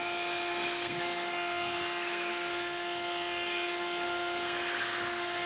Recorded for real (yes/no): no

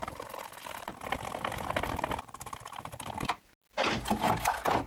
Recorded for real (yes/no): yes